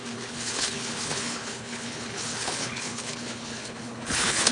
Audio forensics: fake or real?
fake